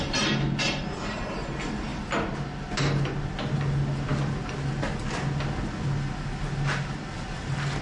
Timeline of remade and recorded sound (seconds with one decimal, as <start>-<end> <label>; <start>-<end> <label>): 0.0-7.8 recorded